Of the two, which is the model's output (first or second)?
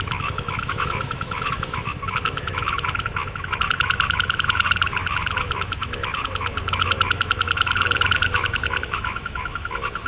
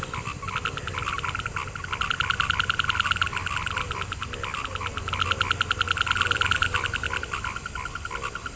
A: first